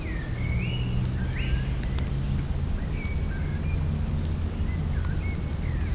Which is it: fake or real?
real